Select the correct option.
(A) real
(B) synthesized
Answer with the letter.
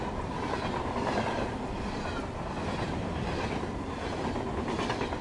A